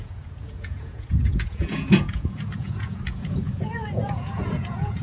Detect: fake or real fake